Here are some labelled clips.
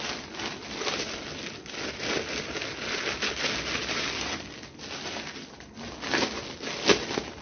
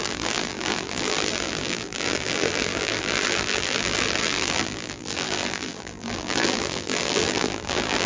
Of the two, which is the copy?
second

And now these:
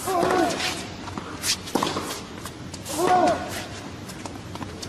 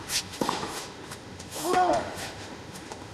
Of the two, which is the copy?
second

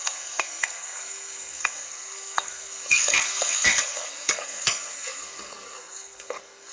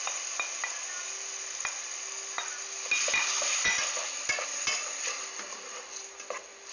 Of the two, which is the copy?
first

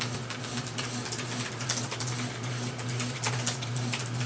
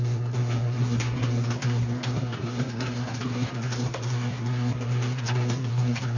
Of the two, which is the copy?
second